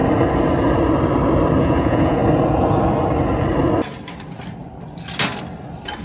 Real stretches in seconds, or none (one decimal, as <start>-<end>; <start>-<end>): 0.0-1.6; 2.2-6.0